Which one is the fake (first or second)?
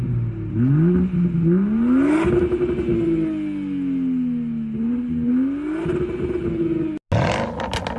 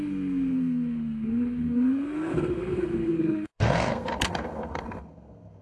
second